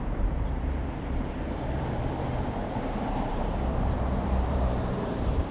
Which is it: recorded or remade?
remade